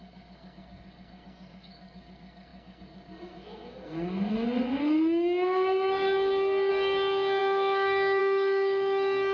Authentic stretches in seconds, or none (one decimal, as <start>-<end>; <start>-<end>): none